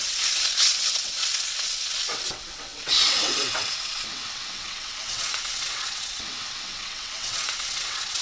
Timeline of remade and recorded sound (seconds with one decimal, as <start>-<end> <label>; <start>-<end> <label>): 0.0-8.2 remade